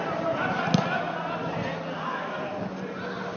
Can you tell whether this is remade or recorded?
recorded